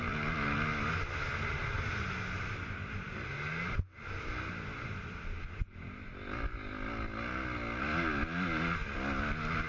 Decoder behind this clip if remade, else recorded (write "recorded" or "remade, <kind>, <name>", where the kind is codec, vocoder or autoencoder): recorded